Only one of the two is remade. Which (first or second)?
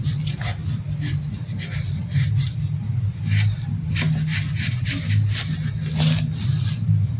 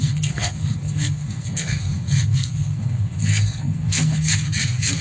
second